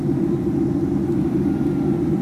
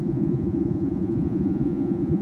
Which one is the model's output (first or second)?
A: second